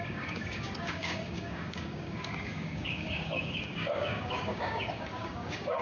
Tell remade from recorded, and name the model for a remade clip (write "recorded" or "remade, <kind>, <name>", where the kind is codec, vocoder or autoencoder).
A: remade, codec, DAC